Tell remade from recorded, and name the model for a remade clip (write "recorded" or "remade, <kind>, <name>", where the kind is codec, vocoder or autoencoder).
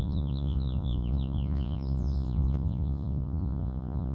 remade, vocoder, Vocos